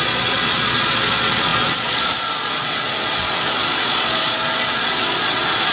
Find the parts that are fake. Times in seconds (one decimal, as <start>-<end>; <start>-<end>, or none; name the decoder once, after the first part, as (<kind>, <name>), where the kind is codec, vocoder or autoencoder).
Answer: 0.0-5.7 (vocoder, Vocos)